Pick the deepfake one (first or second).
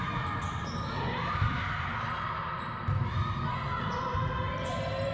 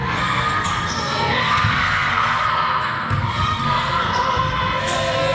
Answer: second